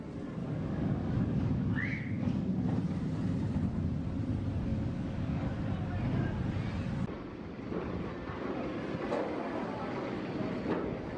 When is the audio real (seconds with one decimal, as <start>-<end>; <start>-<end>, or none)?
0.0-0.4; 2.5-4.7; 5.5-11.2